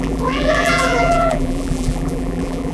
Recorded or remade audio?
remade